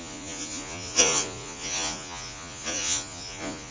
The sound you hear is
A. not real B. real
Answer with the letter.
A